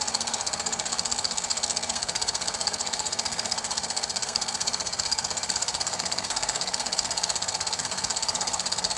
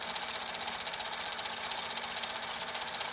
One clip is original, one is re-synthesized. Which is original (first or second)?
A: second